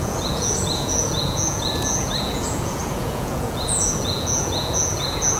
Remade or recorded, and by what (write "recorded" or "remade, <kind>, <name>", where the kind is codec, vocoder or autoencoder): remade, vocoder, Vocos